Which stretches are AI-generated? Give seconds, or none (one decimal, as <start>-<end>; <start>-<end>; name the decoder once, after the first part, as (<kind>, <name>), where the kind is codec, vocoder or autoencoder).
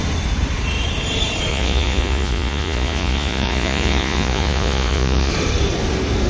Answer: 1.5-5.3 (vocoder, Vocos)